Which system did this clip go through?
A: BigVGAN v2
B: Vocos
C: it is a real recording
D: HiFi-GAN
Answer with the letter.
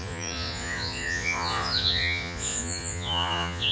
B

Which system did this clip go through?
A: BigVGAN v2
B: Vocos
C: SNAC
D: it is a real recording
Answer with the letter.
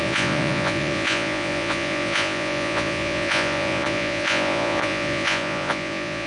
B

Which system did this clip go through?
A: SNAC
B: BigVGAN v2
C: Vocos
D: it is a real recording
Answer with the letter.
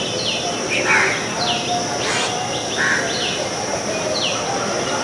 D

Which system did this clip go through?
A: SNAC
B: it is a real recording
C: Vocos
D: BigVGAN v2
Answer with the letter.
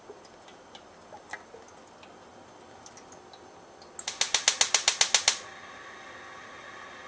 B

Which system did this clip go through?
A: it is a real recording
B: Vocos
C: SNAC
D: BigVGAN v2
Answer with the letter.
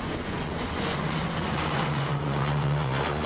B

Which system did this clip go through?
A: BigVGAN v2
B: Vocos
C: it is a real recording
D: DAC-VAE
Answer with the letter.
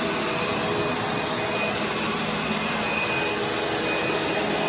C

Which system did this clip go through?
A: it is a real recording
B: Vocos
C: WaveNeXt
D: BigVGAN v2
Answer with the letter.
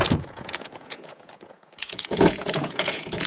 B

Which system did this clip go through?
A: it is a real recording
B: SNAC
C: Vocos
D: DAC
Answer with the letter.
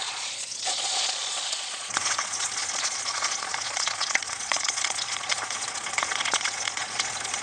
C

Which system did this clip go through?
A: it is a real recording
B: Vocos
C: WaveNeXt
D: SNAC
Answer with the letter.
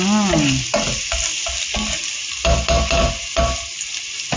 A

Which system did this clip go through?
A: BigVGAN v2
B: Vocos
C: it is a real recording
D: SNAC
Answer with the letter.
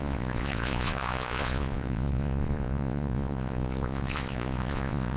B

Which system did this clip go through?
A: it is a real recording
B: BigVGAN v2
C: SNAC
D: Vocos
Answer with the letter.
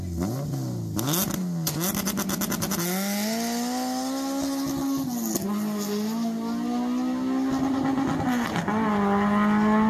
A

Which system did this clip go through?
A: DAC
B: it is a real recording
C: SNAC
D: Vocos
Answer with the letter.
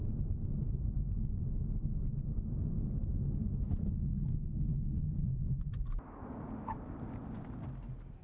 B